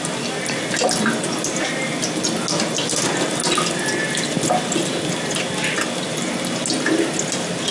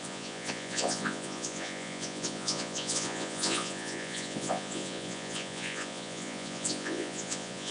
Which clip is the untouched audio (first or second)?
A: first